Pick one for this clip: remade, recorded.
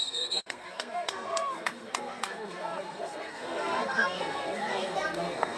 remade